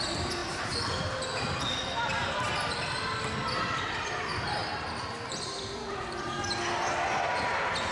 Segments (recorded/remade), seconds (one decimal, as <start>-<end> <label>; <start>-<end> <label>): 0.0-7.9 recorded